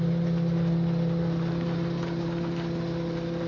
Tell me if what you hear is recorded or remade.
recorded